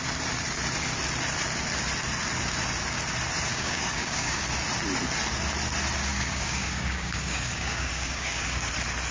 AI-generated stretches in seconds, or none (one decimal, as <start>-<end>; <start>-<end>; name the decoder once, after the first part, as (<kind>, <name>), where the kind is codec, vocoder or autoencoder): 3.5-4.4 (codec, DAC); 6.1-8.7